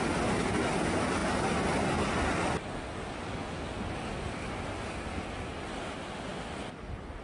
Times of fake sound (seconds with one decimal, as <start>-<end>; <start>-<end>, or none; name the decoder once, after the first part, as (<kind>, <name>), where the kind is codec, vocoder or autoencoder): none